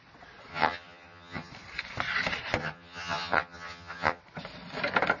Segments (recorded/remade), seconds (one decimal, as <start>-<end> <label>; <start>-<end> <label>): 0.0-0.5 recorded; 0.5-1.5 remade; 1.5-2.6 recorded; 2.6-4.2 remade; 4.2-5.2 recorded